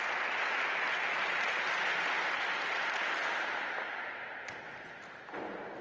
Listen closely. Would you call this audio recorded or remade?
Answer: recorded